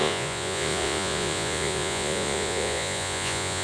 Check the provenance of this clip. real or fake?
fake